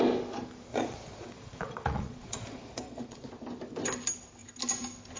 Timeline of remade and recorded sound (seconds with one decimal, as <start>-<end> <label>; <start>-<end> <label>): 0.0-0.7 recorded; 0.7-3.3 remade; 3.3-5.2 recorded